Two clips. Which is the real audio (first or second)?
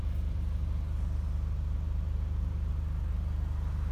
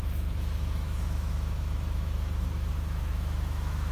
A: first